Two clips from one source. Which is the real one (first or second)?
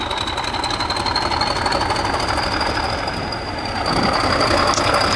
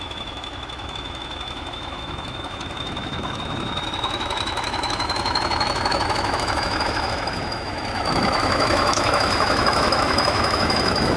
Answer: first